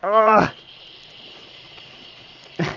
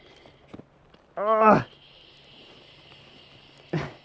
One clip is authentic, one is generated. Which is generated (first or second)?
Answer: first